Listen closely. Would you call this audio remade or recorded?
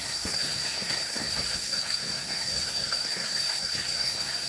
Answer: remade